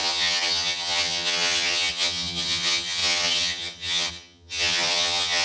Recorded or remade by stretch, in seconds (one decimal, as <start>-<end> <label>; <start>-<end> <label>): 0.0-5.4 remade

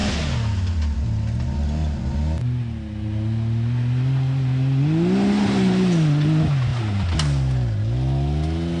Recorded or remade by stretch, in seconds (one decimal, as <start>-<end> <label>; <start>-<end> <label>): 0.0-8.8 recorded